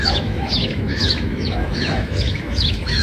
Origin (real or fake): fake